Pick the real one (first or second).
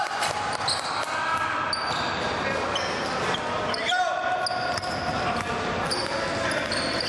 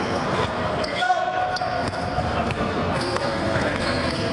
first